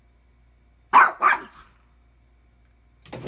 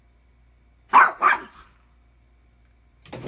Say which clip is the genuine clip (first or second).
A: first